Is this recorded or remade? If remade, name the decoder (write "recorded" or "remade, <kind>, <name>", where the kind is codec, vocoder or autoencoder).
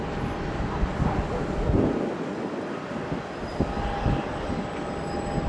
recorded